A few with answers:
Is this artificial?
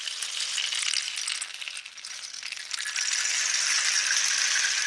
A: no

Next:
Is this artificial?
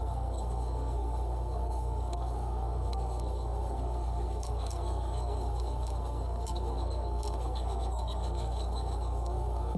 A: yes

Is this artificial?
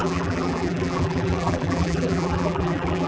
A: yes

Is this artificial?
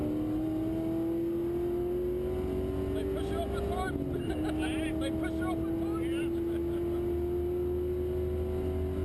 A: no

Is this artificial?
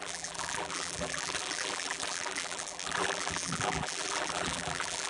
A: yes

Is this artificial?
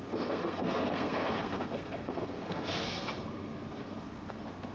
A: yes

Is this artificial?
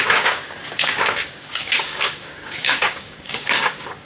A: yes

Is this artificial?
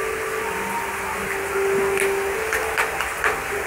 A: no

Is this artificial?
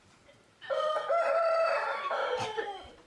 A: yes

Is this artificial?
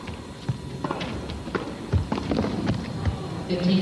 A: no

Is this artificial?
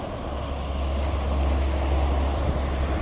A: no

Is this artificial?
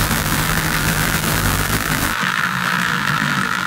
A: yes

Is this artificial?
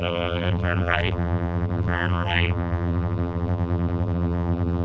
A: yes